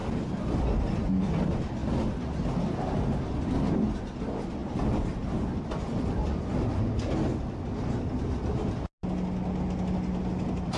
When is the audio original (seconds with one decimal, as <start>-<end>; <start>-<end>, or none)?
0.0-10.8

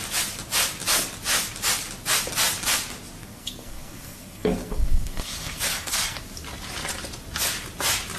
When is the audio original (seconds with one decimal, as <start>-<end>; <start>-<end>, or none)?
0.0-3.2; 6.2-8.2

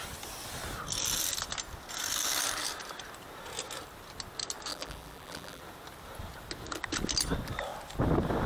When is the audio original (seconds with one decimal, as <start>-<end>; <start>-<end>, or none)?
0.0-4.7; 5.6-8.5